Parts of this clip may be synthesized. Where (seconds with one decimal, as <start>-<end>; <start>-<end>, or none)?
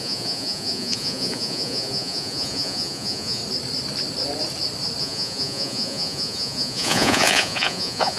0.0-3.4; 5.0-8.2